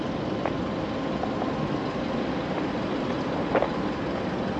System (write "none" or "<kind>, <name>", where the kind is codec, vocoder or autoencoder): none